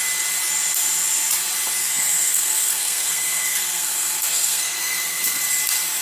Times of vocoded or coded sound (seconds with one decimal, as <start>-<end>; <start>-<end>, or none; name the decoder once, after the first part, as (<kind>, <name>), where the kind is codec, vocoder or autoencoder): 1.8-5.4 (codec, SNAC)